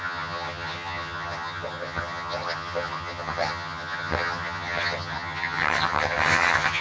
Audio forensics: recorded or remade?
remade